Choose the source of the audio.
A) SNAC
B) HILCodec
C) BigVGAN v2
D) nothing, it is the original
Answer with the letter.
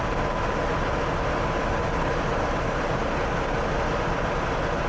D